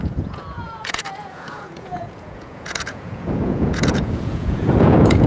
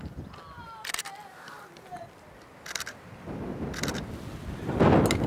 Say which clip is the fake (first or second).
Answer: first